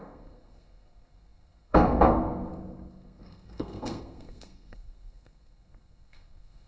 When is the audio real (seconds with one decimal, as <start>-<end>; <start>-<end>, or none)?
none